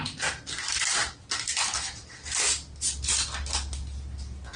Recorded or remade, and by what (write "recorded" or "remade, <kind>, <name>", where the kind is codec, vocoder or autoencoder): recorded